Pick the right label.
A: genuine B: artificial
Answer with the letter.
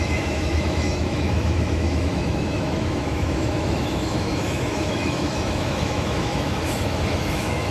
B